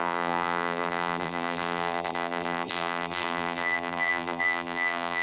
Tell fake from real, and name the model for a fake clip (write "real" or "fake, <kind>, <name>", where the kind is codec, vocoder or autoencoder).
fake, vocoder, BigVGAN v2